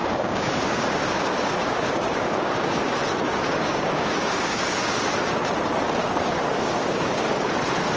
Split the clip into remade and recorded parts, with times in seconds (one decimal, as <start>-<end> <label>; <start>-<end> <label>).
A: 0.0-4.6 remade; 4.6-6.0 recorded; 6.0-7.5 remade; 7.5-8.0 recorded